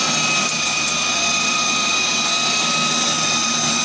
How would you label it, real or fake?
real